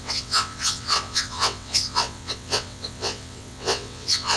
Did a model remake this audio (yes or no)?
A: yes